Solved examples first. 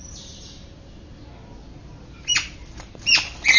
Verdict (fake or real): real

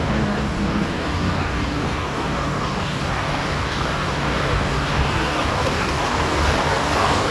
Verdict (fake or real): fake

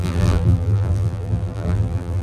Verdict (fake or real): fake